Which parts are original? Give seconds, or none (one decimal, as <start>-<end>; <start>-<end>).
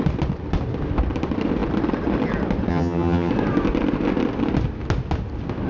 0.0-2.7; 3.3-5.7